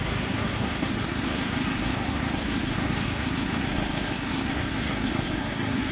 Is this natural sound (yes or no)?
no